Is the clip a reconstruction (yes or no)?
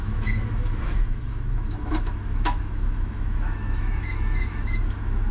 yes